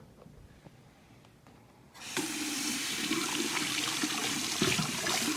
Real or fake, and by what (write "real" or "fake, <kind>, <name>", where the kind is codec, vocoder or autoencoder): fake, vocoder, BigVGAN v2